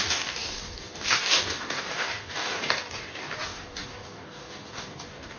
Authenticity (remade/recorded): remade